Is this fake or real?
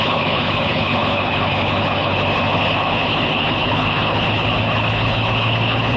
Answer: fake